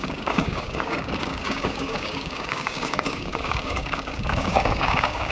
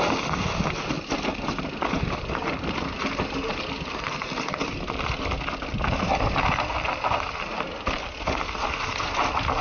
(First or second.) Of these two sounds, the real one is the second